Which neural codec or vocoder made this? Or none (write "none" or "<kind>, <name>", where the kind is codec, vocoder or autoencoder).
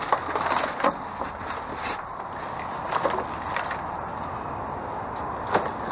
none